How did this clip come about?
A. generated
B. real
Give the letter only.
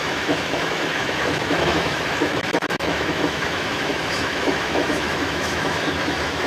A